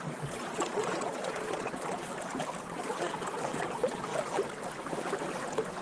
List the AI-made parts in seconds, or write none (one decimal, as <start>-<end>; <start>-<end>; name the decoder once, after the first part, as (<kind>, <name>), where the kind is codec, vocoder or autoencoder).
0.0-2.1 (vocoder, Vocos); 2.6-4.1